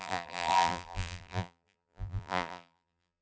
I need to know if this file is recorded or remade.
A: remade